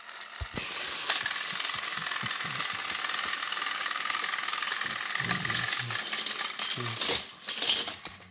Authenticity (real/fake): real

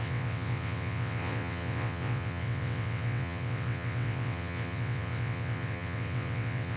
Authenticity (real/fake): fake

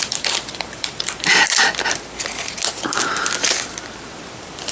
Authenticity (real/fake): fake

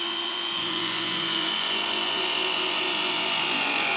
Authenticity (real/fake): fake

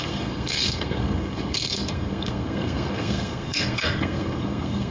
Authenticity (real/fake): fake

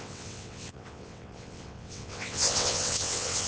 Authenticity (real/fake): fake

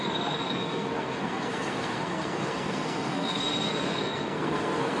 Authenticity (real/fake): fake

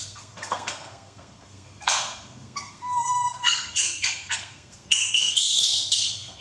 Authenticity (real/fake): fake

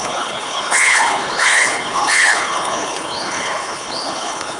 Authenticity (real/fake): fake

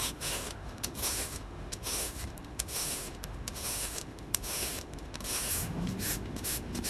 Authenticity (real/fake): fake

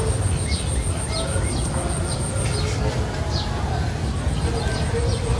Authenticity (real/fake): real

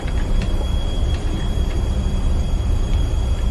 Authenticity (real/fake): fake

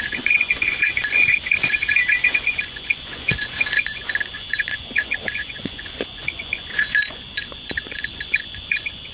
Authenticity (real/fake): fake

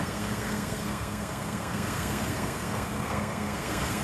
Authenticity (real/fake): fake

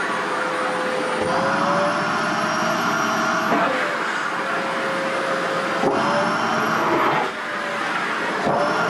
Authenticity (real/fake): real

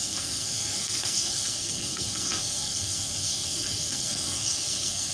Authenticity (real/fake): fake